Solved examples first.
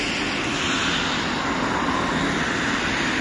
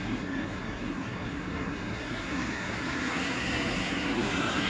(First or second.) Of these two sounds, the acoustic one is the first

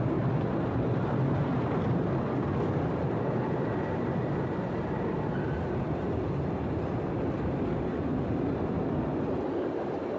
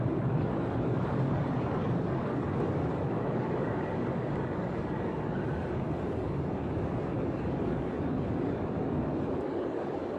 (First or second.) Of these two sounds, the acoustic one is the first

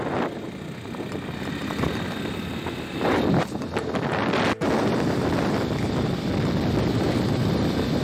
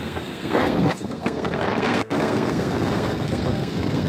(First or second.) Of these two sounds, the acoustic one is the first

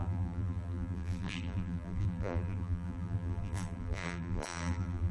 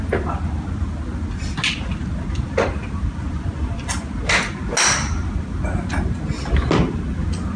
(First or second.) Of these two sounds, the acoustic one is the second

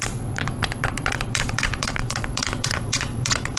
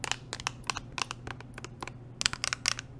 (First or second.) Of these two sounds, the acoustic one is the second